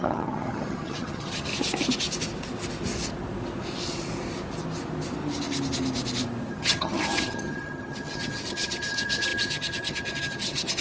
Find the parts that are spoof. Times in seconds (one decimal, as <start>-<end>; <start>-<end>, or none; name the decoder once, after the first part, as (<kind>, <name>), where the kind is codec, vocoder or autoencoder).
0.0-1.5 (vocoder, HiFi-GAN); 6.5-10.8